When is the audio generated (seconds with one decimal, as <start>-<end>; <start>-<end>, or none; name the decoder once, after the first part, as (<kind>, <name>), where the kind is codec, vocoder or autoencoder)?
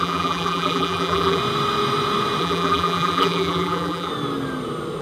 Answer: 0.0-1.4 (vocoder, BigVGAN v2); 2.4-4.1